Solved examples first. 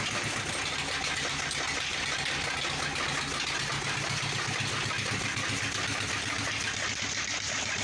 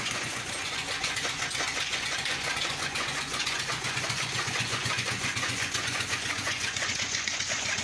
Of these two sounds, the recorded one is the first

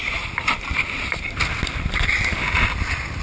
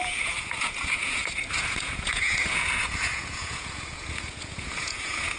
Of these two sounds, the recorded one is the first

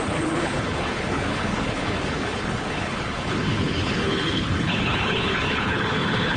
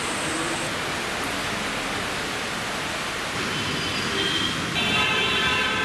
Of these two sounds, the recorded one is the second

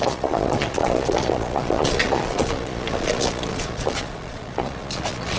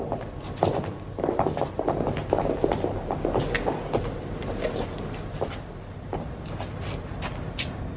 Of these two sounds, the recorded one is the second